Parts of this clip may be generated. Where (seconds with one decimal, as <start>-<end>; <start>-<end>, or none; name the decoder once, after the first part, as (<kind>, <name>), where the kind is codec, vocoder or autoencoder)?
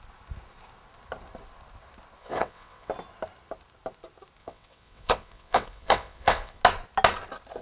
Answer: 2.2-2.9 (vocoder, WaveNeXt); 4.4-6.6